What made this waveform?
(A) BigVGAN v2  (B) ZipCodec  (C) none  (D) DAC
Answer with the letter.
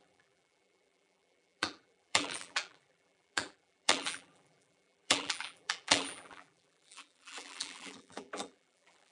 A